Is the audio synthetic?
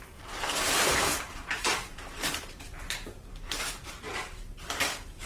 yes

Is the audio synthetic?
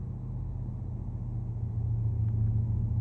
no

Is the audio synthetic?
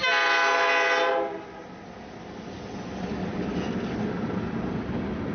no